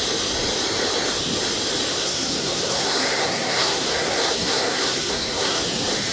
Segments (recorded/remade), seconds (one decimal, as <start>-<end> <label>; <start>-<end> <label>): 0.0-1.9 recorded; 1.9-5.6 remade; 5.6-6.1 recorded